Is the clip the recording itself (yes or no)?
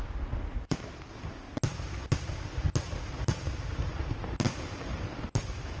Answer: yes